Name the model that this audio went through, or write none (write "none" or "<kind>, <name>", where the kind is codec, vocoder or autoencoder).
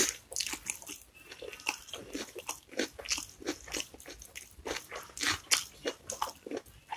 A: none